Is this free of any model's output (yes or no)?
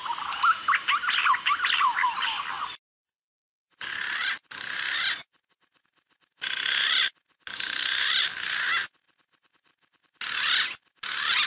yes